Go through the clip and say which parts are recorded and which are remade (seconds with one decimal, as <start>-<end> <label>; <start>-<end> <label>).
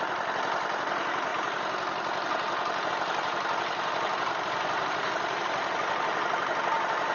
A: 0.0-7.1 recorded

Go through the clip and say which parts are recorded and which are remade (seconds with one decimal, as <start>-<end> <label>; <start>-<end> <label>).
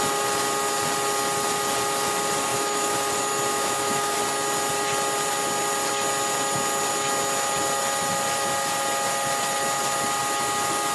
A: 0.0-2.5 recorded; 2.5-3.1 remade; 3.1-3.5 recorded; 3.5-4.2 remade; 4.2-10.9 recorded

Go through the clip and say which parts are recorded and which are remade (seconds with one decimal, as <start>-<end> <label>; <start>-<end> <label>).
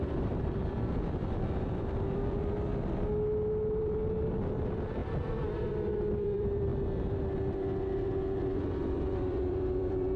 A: 0.0-2.7 remade; 2.7-3.8 recorded; 3.8-5.0 remade; 5.0-5.7 recorded; 5.7-6.7 remade; 6.7-8.4 recorded; 8.4-10.2 remade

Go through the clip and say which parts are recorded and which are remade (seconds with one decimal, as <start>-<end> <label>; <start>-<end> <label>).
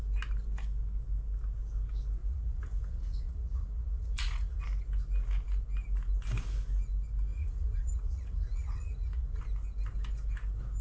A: 0.0-2.2 recorded; 2.2-4.6 remade; 4.6-7.3 recorded; 7.3-9.4 remade; 9.4-10.8 recorded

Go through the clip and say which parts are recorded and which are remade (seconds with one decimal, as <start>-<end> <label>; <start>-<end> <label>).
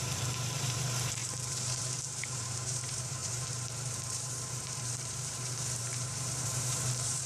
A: 0.0-7.3 remade